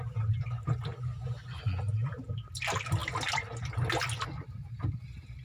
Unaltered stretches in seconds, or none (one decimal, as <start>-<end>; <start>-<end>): 0.0-5.4